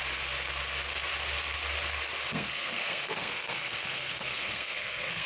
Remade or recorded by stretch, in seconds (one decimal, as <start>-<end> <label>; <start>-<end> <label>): 0.0-2.3 recorded; 2.3-5.3 remade